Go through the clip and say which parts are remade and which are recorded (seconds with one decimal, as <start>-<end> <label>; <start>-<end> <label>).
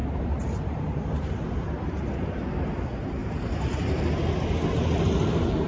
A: 0.0-1.7 remade; 1.7-3.2 recorded; 3.2-4.1 remade; 4.1-5.7 recorded